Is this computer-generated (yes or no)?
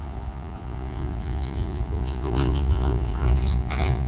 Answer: yes